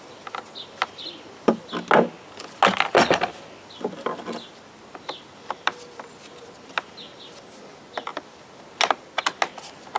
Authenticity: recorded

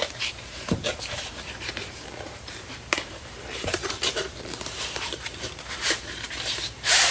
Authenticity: remade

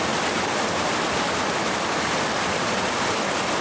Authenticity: recorded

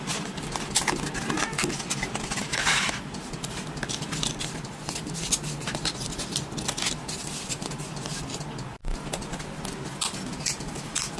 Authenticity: recorded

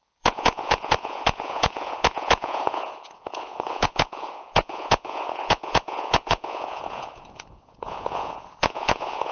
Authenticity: remade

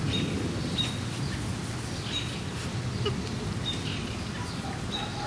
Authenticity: recorded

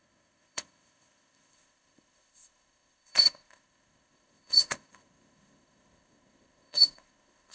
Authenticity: remade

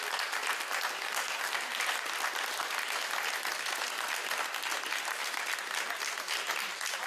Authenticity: recorded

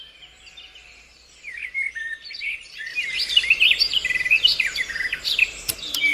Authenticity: remade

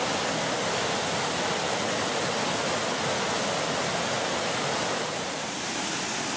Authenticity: recorded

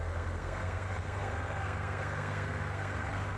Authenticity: remade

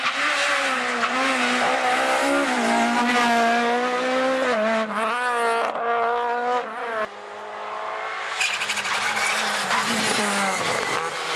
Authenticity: recorded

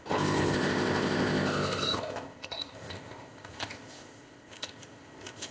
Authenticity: remade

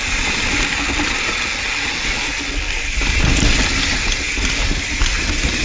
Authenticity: recorded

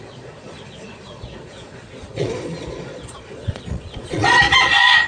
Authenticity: remade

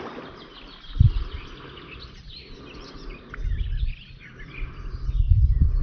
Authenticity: recorded